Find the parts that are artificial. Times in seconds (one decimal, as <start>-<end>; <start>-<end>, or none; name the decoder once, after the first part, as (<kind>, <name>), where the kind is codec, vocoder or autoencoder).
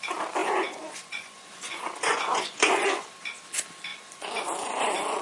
0.4-3.1 (vocoder, Vocos); 3.9-5.2